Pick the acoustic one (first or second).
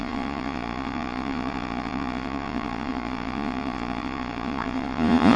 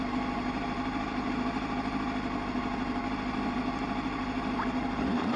second